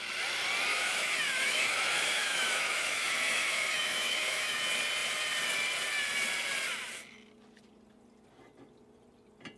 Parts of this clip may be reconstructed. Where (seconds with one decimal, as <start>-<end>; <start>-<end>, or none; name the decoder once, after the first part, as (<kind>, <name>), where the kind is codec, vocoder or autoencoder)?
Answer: 0.7-4.6 (autoencoder, DAC-VAE)